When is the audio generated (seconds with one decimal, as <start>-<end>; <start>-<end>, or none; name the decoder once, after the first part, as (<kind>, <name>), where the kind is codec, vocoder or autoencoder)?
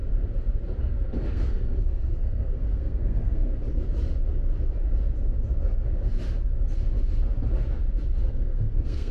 1.3-3.5 (codec, SNAC); 8.2-9.1